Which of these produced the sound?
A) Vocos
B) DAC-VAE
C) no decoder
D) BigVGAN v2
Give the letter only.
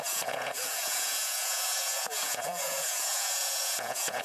A